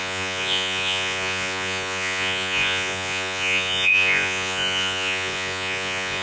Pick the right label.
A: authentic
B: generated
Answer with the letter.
B